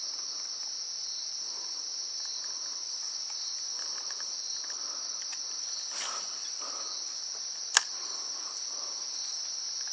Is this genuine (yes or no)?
yes